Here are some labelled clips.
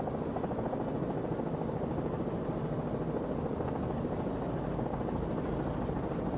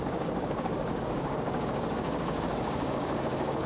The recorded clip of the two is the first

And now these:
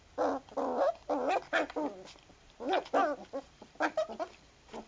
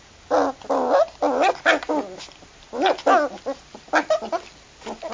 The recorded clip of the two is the second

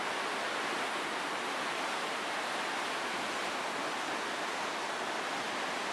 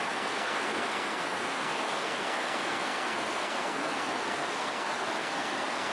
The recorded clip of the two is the first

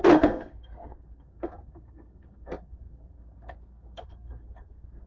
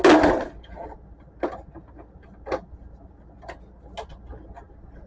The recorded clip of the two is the second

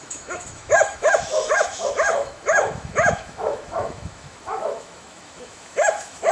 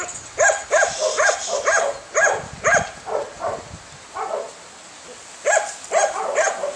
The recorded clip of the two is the second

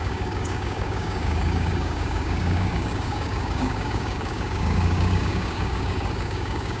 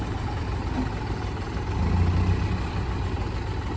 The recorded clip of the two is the second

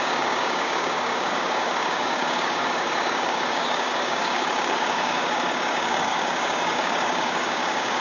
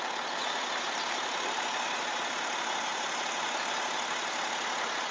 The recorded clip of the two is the second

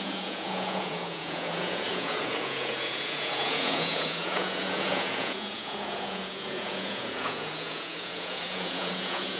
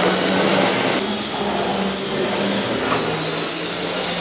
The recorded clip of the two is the second